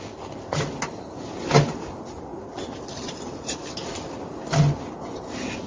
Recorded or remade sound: recorded